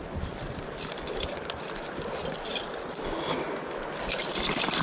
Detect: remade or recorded recorded